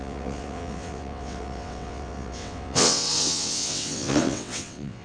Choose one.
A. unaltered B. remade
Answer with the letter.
B